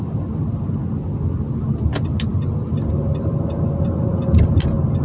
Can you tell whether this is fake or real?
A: real